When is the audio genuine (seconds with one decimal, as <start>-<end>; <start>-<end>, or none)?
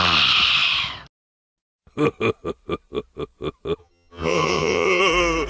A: 0.0-3.8; 5.0-5.5